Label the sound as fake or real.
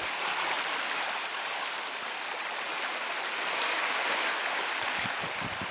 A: real